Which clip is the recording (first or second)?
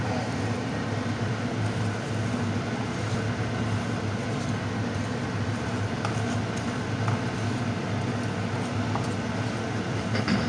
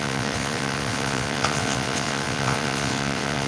first